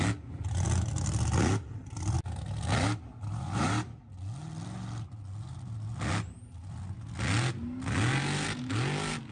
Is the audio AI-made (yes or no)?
no